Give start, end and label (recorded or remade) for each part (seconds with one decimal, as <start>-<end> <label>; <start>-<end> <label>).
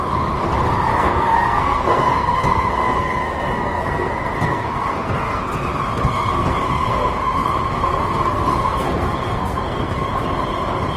0.0-0.9 recorded; 0.9-5.4 remade; 5.4-5.9 recorded; 5.9-10.1 remade; 10.1-11.0 recorded